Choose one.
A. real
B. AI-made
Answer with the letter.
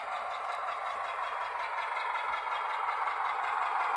A